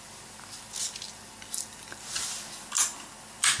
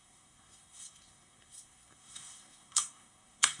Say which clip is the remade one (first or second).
second